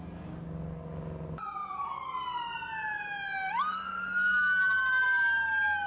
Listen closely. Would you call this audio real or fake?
real